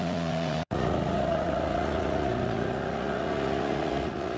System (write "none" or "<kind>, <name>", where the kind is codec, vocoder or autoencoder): vocoder, Vocos